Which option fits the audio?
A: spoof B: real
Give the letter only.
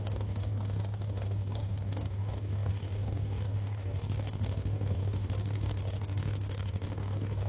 A